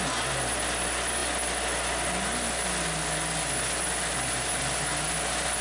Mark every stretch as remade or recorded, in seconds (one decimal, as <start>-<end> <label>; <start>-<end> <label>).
0.0-5.6 recorded